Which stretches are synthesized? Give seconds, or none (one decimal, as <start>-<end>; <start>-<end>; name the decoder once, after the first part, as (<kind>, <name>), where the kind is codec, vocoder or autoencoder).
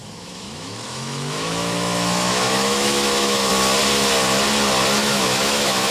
0.0-3.5 (autoencoder, DAC-VAE); 5.0-5.9